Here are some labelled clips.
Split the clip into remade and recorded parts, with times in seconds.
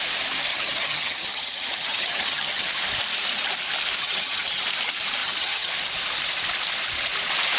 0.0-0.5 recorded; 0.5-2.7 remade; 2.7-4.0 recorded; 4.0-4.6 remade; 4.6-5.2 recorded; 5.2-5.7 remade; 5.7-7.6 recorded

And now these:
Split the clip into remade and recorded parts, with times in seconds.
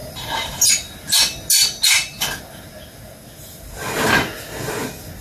0.0-0.7 remade; 0.7-5.2 recorded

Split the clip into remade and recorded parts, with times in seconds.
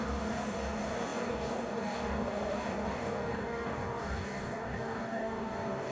0.0-5.9 remade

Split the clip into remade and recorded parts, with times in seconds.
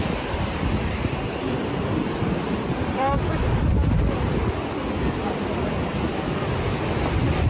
0.0-3.7 remade; 3.7-6.0 recorded; 6.0-7.5 remade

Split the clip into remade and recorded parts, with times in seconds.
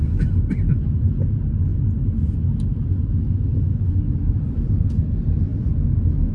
0.0-6.3 recorded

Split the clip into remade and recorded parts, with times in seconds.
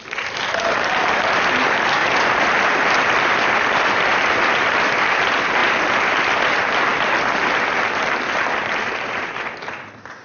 0.0-2.0 recorded; 2.0-4.8 remade; 4.8-5.6 recorded; 5.6-7.1 remade; 7.1-10.2 recorded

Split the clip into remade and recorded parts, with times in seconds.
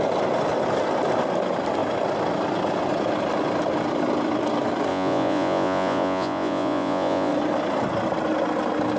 0.0-4.9 recorded; 4.9-7.3 remade; 7.3-9.0 recorded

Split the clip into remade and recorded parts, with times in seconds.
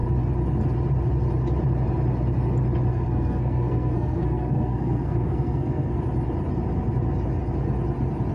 0.0-2.9 recorded; 2.9-6.0 remade; 6.0-8.3 recorded